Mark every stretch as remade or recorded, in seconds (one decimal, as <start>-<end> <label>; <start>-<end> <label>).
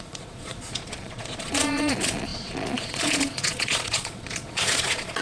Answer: 0.0-5.2 remade